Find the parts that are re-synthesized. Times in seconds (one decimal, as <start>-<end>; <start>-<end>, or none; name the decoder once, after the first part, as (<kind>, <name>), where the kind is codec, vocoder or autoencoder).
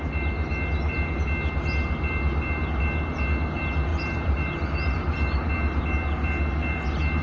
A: 3.9-5.5 (vocoder, BigVGAN v2)